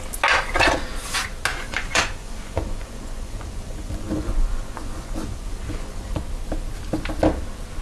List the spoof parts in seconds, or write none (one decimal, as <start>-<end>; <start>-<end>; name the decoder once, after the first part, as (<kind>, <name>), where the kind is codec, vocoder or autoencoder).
1.5-6.2 (vocoder, Vocos)